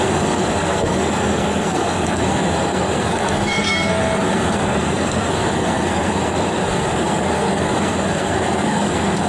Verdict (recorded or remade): remade